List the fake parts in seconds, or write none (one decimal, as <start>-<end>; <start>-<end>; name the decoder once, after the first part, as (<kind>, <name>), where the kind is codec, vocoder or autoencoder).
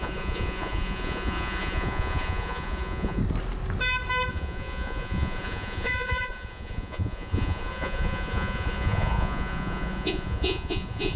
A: 0.0-3.2 (vocoder, Vocos); 4.3-11.2